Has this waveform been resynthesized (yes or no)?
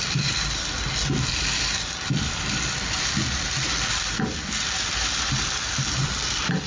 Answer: yes